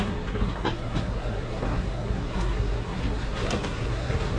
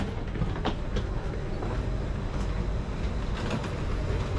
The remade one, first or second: first